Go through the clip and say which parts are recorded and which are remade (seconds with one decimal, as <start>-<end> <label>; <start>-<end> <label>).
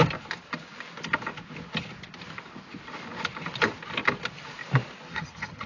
0.0-5.1 recorded; 5.1-5.7 remade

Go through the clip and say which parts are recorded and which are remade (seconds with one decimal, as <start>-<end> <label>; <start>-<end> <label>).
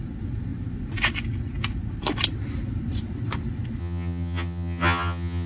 0.0-3.8 recorded; 3.8-5.5 remade